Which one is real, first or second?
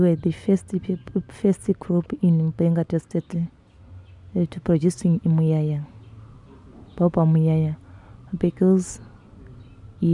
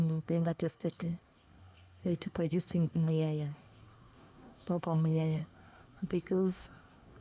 first